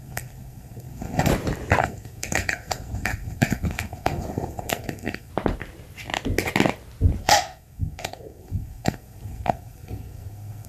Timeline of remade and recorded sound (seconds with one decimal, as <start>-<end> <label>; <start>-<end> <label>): 0.0-1.3 remade; 1.3-1.8 recorded; 1.8-5.3 remade; 5.3-7.2 recorded; 7.2-10.7 remade